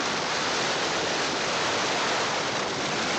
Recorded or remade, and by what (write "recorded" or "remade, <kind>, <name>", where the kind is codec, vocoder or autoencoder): recorded